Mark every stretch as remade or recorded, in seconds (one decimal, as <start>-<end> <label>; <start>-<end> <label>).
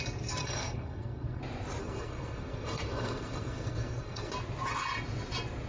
0.0-0.4 recorded; 0.4-1.4 remade; 1.4-1.8 recorded; 1.8-4.3 remade; 4.3-5.7 recorded